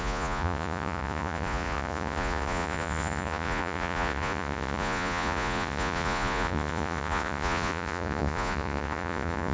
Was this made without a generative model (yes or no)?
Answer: no